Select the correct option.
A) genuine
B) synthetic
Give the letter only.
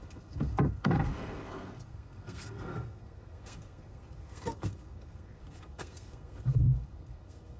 B